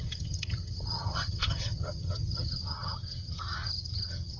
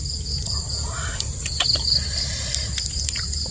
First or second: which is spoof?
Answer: first